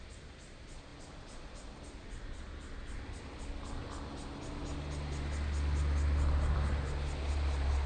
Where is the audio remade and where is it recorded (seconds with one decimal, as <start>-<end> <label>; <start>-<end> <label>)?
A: 0.0-7.9 recorded